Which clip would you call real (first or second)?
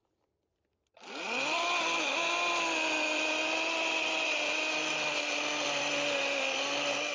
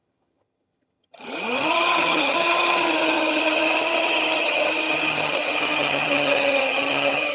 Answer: first